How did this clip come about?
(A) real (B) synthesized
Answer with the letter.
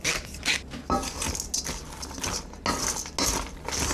A